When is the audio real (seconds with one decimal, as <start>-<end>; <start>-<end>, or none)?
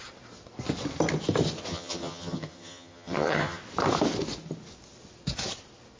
0.0-1.7; 3.6-6.0